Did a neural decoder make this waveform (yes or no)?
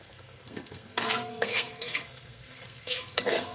yes